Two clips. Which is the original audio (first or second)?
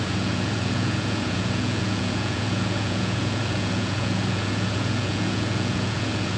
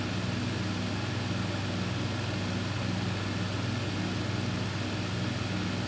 second